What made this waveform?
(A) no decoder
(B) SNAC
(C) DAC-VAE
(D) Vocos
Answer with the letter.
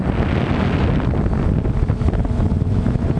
A